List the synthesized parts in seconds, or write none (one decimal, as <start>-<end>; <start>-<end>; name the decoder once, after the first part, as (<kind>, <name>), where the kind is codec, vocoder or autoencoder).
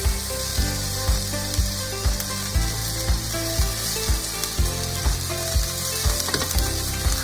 none